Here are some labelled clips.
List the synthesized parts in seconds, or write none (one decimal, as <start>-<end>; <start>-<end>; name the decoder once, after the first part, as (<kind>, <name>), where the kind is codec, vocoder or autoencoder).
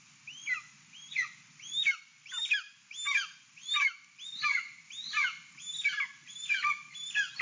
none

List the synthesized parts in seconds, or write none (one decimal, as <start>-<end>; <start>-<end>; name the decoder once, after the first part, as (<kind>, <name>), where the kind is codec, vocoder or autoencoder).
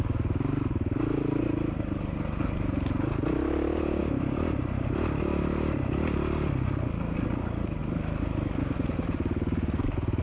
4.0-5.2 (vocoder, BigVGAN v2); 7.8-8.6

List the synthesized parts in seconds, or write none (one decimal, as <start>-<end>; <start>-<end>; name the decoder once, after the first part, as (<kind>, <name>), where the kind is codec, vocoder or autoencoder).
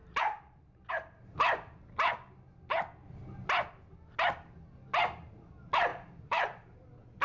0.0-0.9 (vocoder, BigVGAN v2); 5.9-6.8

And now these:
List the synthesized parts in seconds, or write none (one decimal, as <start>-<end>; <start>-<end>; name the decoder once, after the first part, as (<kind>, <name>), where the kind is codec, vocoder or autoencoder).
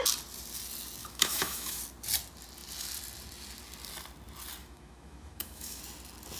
1.0-1.8 (autoencoder, DAC-VAE); 4.6-5.8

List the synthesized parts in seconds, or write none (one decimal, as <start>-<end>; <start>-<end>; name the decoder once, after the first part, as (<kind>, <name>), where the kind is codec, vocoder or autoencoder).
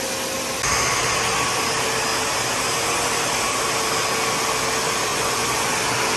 5.1-5.7 (vocoder, Vocos)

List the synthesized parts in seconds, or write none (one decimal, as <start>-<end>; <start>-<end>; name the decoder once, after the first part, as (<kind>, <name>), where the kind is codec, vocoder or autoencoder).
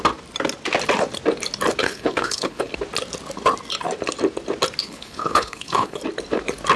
1.8-2.7 (codec, HILCodec); 4.8-6.0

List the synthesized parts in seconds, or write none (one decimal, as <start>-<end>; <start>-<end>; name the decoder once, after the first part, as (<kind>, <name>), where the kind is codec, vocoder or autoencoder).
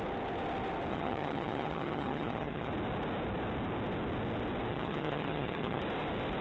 0.9-2.7 (vocoder, HiFi-GAN); 4.7-5.8